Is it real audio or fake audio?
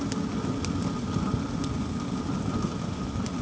real